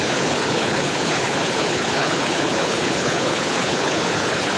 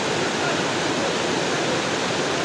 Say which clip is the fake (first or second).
first